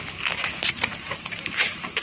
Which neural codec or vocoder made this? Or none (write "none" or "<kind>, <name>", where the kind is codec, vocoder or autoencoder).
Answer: none